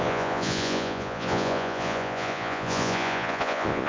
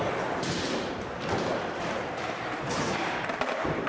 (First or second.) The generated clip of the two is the first